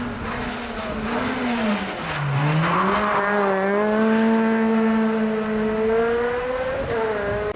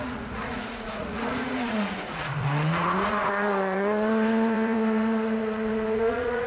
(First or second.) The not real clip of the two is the second